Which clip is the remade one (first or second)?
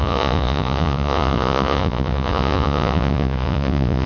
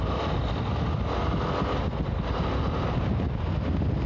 first